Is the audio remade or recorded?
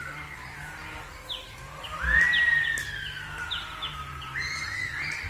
recorded